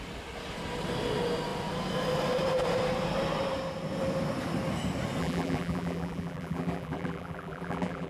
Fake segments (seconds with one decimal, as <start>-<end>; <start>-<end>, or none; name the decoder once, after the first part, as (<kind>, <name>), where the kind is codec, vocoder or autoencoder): 5.2-8.1 (vocoder, BigVGAN v2)